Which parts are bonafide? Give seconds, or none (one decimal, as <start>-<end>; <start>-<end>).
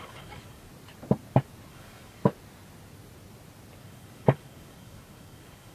0.7-1.7; 2.2-3.8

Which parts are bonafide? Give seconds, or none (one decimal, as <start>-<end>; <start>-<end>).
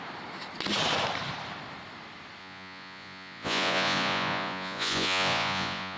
0.0-2.4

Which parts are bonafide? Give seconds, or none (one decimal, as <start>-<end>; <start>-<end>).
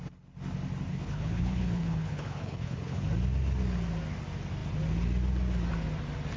0.0-0.9; 3.0-6.4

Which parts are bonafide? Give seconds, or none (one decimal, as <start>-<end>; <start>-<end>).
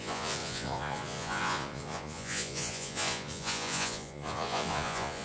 none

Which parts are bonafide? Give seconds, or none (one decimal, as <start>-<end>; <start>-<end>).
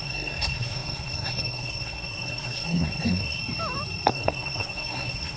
3.4-4.1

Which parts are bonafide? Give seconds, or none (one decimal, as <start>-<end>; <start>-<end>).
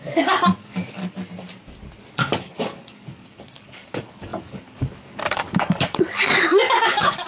1.0-2.1